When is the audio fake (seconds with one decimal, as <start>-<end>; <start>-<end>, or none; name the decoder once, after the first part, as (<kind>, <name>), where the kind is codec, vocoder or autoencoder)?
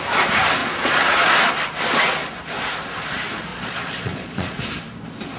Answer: 0.6-1.4 (vocoder, Vocos); 3.5-4.7